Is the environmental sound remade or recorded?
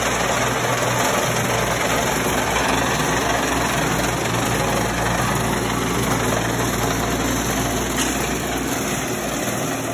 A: recorded